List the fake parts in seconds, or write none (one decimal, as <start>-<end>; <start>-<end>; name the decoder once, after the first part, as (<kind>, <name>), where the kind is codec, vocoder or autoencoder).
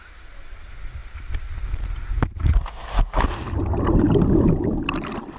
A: none